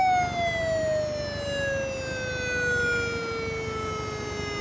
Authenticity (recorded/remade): recorded